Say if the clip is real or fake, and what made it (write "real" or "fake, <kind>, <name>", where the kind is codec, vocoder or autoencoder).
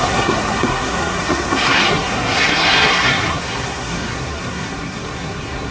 fake, codec, SNAC